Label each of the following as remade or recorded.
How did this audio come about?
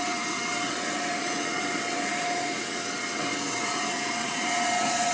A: remade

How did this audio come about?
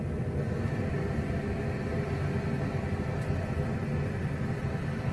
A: recorded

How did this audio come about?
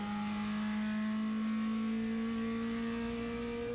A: recorded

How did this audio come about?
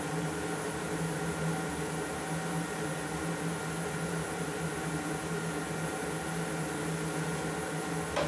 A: recorded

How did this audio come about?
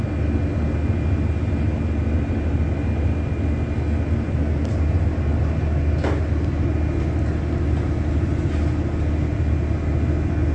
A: recorded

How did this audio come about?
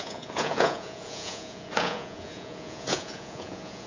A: remade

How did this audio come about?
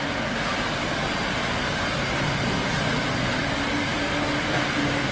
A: recorded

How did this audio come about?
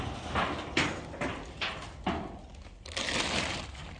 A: recorded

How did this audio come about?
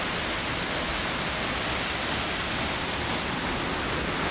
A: recorded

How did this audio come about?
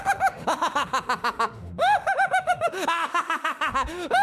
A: remade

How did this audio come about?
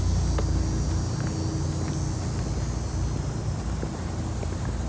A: recorded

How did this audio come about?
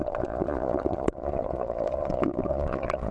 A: remade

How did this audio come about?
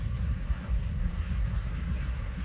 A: remade